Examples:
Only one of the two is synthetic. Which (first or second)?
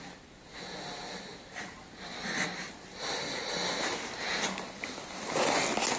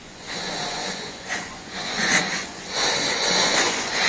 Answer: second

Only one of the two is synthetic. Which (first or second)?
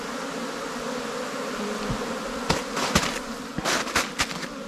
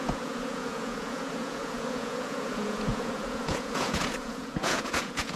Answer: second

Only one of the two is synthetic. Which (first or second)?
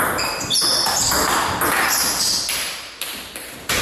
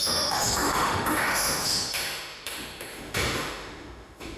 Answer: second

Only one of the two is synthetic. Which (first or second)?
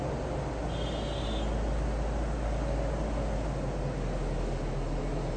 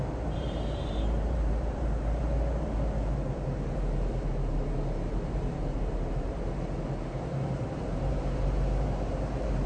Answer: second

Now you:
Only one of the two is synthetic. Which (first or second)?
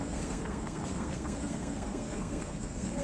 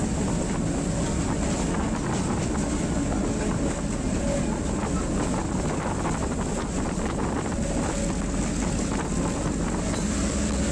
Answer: first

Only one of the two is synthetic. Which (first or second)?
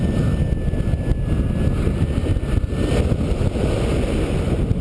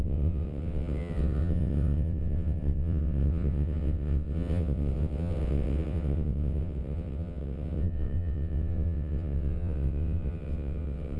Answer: second